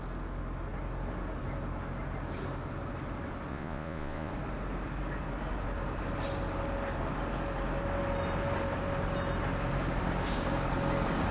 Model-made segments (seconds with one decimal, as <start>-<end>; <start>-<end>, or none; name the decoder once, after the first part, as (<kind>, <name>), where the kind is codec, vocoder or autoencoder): 3.5-4.3 (vocoder, Vocos)